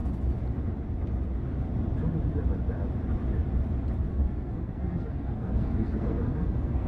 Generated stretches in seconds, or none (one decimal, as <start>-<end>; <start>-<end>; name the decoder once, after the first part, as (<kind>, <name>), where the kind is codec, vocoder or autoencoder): 4.1-6.9 (codec, SNAC)